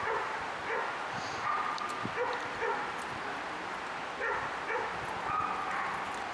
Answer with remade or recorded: recorded